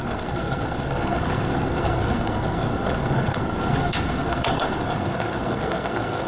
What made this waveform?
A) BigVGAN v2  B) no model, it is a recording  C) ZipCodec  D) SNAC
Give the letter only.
D